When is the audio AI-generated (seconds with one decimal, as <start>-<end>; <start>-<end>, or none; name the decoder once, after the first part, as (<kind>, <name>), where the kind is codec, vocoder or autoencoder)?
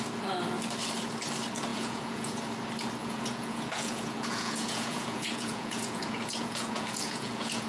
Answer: 1.7-2.4 (vocoder, Vocos); 3.0-7.7